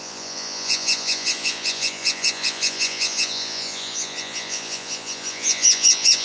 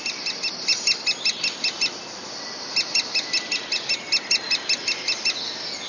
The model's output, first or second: first